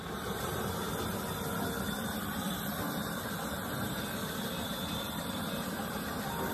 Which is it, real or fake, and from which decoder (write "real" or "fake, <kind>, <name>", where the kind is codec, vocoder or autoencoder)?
real